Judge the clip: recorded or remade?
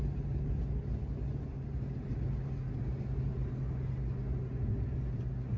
recorded